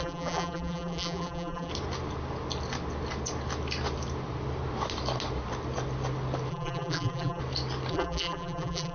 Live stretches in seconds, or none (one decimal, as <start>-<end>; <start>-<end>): 1.7-6.5; 7.4-7.9